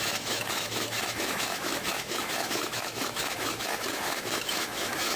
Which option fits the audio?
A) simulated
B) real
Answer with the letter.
A